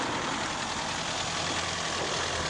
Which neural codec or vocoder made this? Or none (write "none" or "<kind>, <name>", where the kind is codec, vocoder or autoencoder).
none